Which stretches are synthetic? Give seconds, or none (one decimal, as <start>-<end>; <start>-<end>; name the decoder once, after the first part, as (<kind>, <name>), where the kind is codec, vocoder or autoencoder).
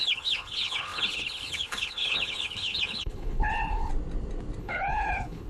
0.0-3.9 (codec, HILCodec); 4.6-5.5